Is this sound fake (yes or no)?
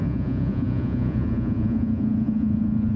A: yes